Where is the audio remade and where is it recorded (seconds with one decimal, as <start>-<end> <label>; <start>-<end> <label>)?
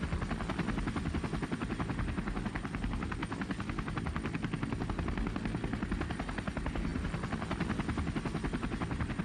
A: 0.0-9.2 recorded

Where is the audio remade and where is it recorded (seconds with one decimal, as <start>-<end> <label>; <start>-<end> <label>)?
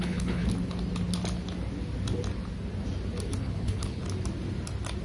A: 0.0-0.4 remade; 0.4-3.4 recorded; 3.4-4.0 remade; 4.0-5.0 recorded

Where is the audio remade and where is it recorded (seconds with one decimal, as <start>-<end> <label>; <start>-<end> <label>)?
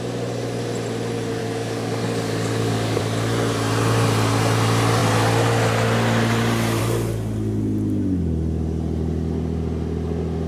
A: 0.0-1.4 recorded; 1.4-3.0 remade; 3.0-10.5 recorded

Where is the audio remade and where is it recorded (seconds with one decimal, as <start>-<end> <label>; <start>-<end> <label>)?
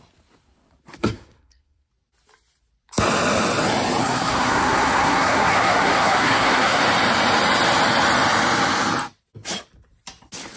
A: 0.0-1.0 recorded; 1.0-1.9 remade; 1.9-4.0 recorded; 4.0-6.8 remade; 6.8-10.6 recorded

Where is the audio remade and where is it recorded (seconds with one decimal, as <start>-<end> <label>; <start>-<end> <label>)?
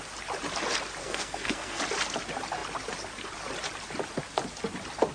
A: 0.0-1.0 recorded; 1.0-1.8 remade; 1.8-5.1 recorded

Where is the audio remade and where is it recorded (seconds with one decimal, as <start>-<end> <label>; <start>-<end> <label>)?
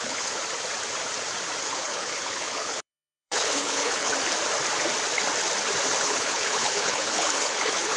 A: 0.0-0.4 remade; 0.4-1.6 recorded; 1.6-4.1 remade; 4.1-6.0 recorded; 6.0-8.0 remade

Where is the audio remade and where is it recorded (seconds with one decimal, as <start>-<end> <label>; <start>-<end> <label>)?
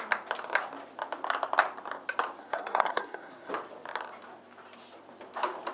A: 0.0-2.4 recorded; 2.4-3.5 remade; 3.5-5.7 recorded